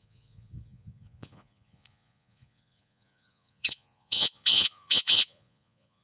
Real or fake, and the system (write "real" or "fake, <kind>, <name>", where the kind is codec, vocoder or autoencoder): fake, vocoder, Vocos